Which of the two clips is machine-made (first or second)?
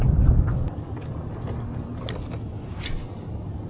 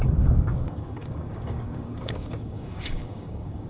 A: second